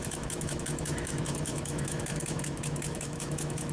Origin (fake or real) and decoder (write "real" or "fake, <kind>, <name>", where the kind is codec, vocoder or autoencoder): fake, autoencoder, DAC-VAE